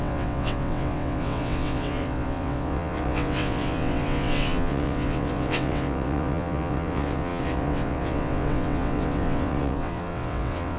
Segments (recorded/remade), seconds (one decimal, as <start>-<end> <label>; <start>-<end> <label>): 0.0-10.8 remade